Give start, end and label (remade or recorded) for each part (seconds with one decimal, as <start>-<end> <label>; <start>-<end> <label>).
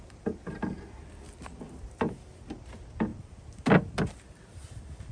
0.0-5.1 recorded